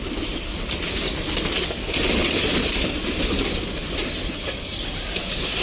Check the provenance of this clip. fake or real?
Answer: real